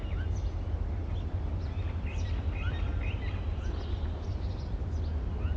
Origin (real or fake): real